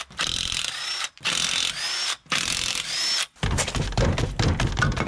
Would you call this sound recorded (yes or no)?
yes